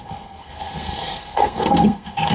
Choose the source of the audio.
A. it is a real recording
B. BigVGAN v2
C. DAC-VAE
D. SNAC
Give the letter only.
D